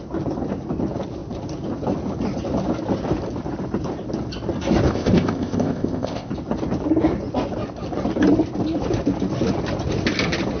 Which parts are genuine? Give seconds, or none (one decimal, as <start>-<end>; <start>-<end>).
0.0-4.9; 6.3-10.6